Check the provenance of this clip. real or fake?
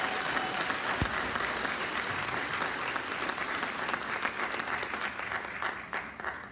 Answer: real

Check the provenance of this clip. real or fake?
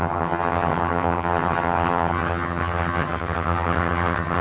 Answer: fake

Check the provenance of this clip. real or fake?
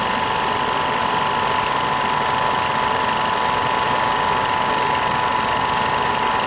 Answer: real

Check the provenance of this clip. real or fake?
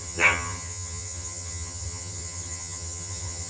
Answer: fake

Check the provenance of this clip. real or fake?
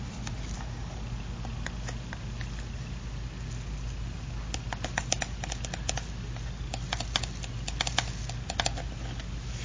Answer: real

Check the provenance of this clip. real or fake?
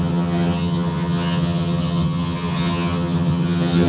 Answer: fake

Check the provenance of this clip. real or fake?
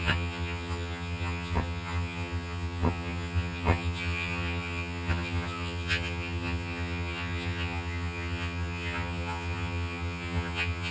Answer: fake